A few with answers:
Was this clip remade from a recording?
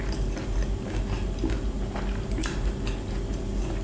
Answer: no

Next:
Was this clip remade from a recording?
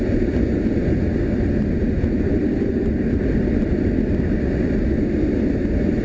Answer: no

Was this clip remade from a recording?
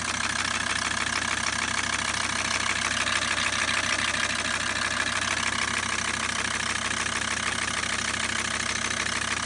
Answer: no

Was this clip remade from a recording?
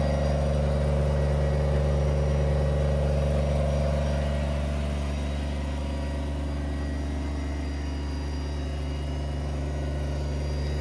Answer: no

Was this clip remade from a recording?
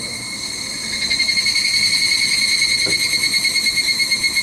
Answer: yes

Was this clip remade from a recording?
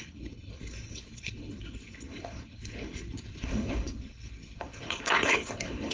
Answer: yes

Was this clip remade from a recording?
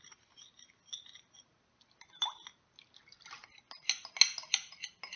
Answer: no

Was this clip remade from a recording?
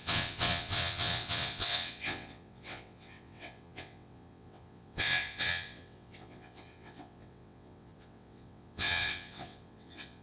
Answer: yes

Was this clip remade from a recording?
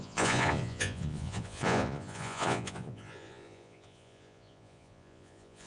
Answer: yes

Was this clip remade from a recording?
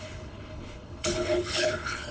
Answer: yes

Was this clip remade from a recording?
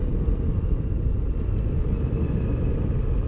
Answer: no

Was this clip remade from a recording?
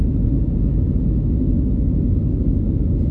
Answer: no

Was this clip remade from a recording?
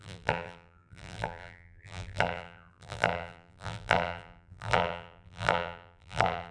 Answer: yes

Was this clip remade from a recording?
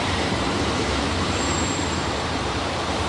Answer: yes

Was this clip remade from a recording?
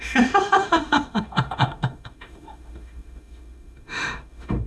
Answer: yes